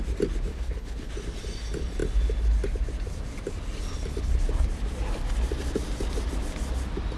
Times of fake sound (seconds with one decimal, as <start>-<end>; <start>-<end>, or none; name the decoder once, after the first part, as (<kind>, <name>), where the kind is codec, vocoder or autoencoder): 0.5-1.1 (codec, HILCodec)